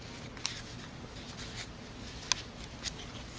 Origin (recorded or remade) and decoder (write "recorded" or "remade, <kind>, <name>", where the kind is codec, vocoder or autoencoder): recorded